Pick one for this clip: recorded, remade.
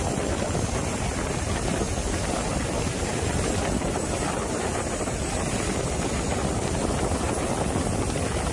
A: recorded